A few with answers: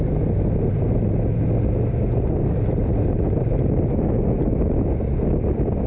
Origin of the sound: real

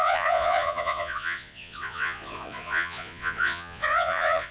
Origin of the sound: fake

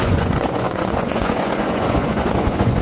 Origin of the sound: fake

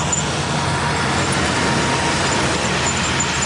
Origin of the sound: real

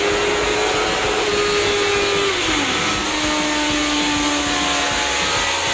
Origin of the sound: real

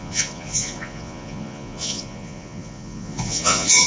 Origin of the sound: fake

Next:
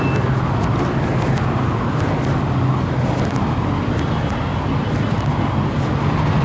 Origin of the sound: real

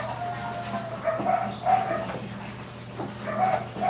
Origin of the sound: real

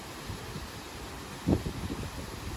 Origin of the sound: real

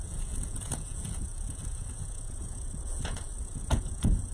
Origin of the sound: fake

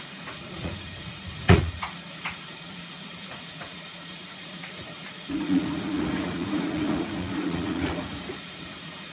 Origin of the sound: fake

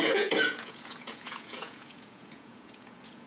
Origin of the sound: fake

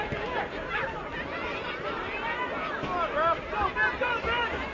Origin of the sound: real